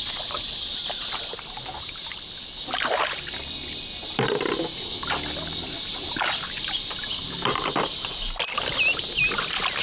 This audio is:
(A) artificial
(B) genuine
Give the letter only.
B